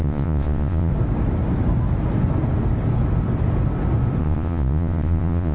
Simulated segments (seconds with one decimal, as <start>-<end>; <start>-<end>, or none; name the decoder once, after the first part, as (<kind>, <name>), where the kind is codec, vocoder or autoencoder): 0.0-0.9 (vocoder, Vocos); 4.2-5.5